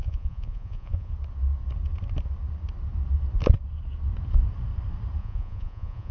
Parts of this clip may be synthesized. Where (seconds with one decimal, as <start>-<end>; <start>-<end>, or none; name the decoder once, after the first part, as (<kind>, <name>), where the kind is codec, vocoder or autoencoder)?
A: 0.0-1.1 (vocoder, Vocos); 5.2-6.1